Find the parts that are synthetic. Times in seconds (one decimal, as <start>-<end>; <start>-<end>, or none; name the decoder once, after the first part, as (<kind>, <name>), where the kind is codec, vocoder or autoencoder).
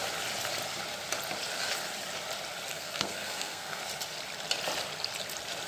2.7-3.8 (codec, SNAC)